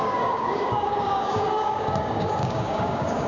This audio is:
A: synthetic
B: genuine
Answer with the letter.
A